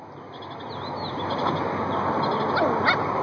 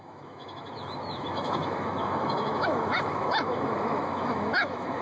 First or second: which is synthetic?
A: second